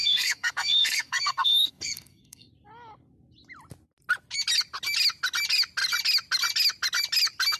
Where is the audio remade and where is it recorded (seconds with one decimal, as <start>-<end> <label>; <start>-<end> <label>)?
0.0-2.5 remade; 2.5-7.6 recorded